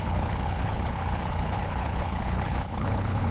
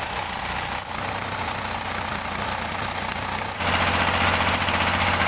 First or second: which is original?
second